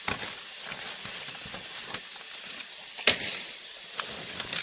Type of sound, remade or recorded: recorded